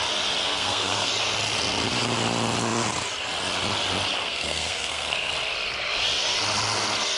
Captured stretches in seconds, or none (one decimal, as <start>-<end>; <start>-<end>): 0.0-0.4; 1.1-4.2; 5.3-7.2